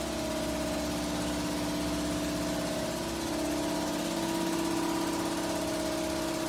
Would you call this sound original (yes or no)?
yes